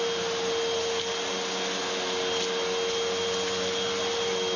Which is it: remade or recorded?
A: recorded